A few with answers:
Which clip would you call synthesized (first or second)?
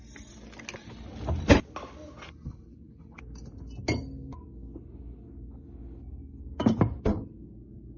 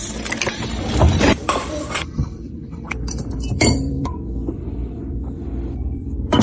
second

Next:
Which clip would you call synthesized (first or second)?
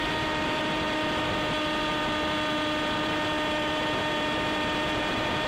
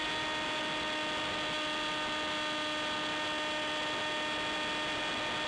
first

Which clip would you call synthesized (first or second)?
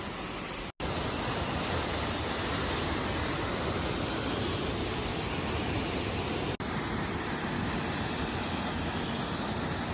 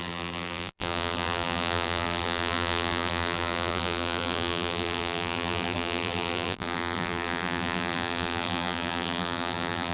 second